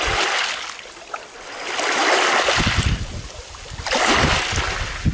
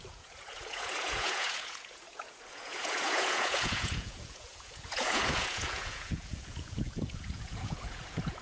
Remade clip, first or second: second